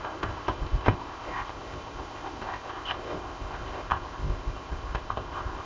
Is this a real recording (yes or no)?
no